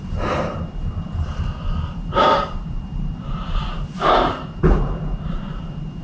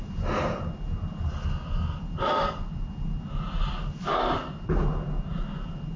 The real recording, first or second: second